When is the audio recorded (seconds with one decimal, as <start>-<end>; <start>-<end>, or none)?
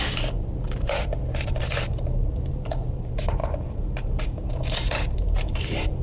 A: 3.4-4.0